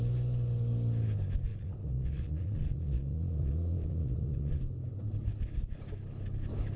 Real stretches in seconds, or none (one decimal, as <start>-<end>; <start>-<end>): 0.0-1.5; 4.6-6.8